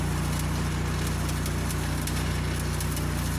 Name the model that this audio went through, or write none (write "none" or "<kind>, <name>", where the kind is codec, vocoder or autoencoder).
none